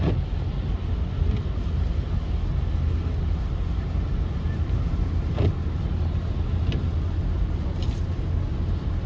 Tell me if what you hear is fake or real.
real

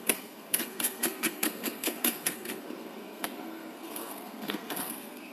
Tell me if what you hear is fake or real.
fake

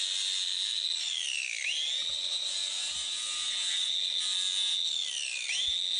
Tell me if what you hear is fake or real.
real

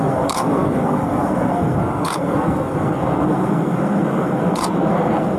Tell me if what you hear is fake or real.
fake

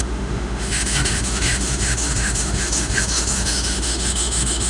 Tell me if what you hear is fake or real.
fake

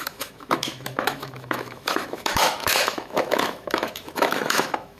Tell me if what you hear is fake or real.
fake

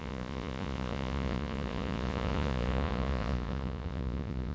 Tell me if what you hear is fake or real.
fake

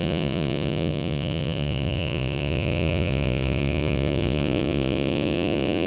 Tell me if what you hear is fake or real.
fake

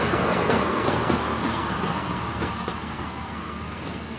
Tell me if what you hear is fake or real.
fake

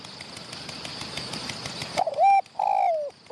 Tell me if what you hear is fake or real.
real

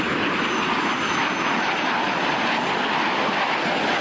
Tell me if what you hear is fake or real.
real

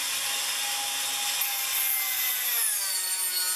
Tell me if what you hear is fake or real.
real